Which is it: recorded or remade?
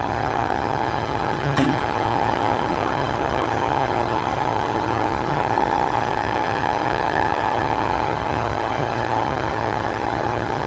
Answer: remade